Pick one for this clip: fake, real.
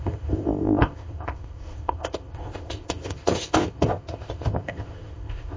fake